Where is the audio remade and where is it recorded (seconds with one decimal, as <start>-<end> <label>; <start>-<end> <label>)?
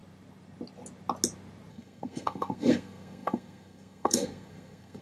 0.0-1.7 recorded; 1.7-5.0 remade